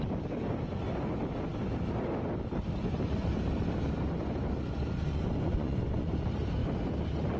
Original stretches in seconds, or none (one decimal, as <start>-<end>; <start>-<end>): 0.0-5.1; 6.1-7.4